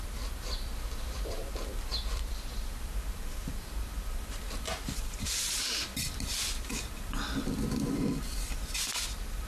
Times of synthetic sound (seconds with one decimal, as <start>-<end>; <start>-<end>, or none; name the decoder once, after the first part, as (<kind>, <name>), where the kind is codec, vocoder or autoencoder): 0.0-9.5 (vocoder, BigVGAN v2)